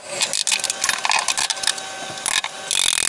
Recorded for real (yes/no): yes